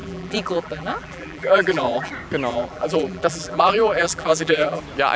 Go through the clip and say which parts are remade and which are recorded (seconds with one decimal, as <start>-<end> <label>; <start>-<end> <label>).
0.0-2.1 remade; 2.1-2.5 recorded; 2.5-4.8 remade; 4.8-5.2 recorded